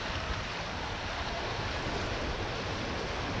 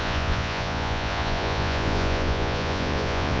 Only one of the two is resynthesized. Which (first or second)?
second